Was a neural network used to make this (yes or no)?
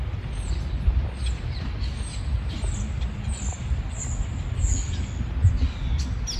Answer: no